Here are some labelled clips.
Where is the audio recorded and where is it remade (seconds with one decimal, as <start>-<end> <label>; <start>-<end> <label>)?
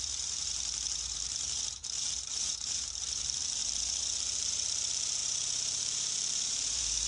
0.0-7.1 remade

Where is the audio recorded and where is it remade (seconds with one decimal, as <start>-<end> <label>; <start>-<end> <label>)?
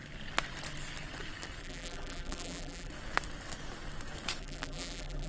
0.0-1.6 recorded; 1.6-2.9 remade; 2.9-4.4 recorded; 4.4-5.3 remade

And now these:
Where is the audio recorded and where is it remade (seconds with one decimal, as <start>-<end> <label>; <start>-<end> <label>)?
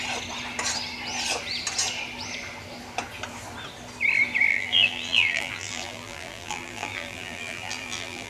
0.0-4.5 recorded; 4.5-8.3 remade